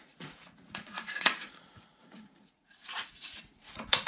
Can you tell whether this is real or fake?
fake